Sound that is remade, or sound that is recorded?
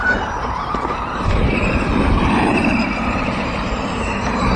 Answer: remade